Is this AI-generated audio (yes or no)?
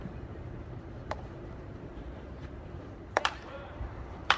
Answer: yes